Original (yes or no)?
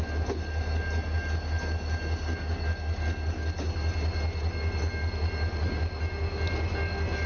yes